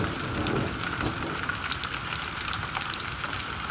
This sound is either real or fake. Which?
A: real